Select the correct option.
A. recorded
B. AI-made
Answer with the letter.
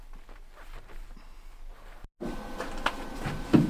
A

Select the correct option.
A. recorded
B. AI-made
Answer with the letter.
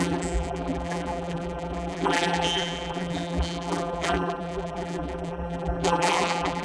B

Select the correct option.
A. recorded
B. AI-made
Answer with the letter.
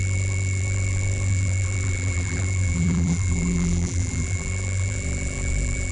B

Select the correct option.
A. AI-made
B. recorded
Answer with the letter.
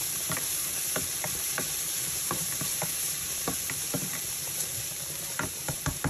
A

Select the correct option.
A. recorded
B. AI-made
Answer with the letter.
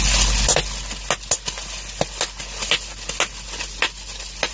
A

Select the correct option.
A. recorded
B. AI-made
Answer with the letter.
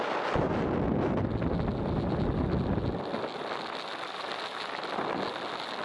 A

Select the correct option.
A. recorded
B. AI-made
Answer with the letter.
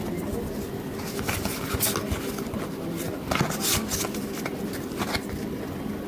A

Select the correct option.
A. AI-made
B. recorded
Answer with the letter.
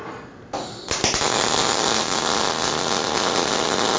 A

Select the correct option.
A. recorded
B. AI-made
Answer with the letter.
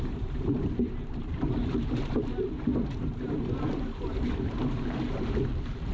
B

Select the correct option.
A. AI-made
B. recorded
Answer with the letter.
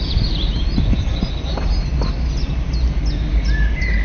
B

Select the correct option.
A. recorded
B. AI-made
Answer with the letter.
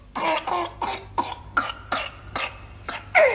B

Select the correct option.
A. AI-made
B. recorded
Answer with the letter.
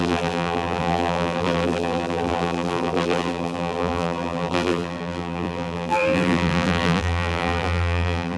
A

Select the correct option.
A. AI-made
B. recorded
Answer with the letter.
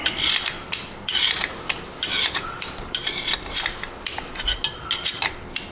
B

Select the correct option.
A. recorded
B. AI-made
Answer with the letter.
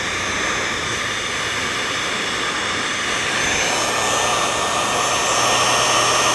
A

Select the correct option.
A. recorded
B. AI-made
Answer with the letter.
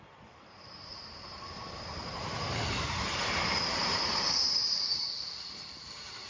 B